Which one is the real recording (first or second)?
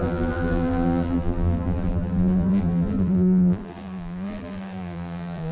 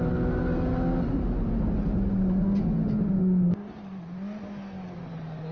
second